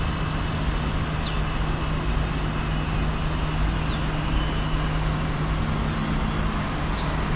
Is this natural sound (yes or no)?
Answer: yes